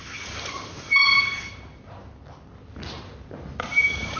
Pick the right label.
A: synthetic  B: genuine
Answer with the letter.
B